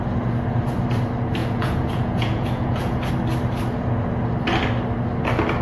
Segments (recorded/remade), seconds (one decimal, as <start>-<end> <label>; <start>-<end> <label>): 0.0-1.4 recorded; 1.4-3.1 remade; 3.1-5.6 recorded